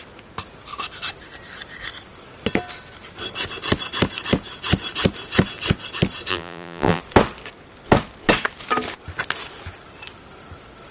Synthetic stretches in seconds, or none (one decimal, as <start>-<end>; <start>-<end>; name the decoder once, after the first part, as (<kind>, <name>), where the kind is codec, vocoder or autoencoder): 6.3-7.0 (vocoder, BigVGAN v2)

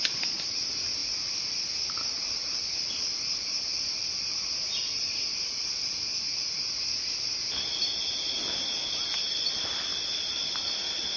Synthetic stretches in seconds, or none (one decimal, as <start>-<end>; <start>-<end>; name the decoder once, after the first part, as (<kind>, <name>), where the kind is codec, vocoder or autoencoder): 1.0-5.1 (vocoder, BigVGAN v2); 9.9-10.4